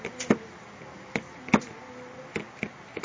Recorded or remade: recorded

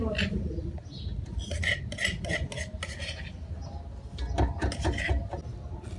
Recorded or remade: recorded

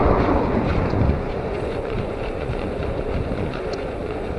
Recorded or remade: remade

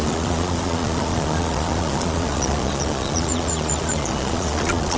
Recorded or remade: remade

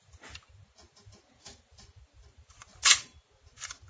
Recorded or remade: recorded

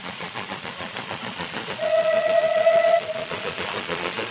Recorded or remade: remade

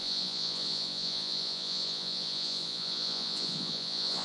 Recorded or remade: remade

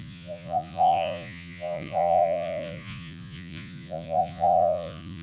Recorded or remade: remade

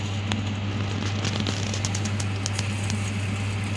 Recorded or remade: recorded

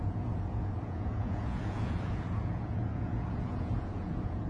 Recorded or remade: remade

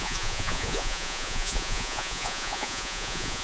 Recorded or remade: remade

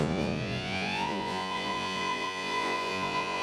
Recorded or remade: remade